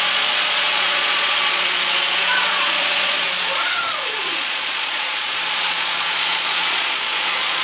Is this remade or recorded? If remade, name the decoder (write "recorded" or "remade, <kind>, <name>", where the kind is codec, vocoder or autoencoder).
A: remade, vocoder, Vocos